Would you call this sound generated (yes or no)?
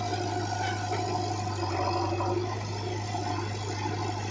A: no